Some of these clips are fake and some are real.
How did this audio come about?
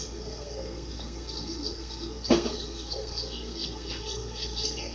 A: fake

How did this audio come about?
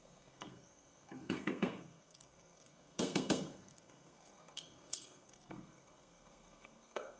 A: fake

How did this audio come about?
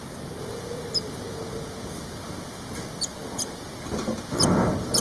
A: real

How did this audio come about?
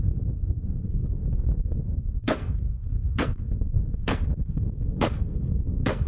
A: fake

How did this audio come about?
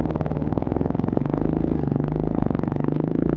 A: fake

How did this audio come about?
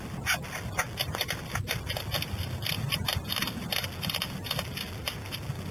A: real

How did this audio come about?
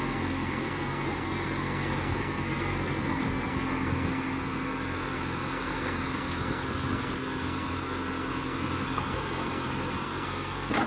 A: fake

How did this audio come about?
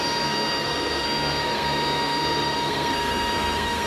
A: fake